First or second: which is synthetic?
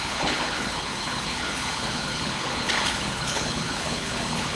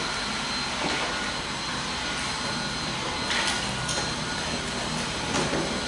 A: first